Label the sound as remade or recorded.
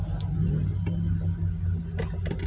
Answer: recorded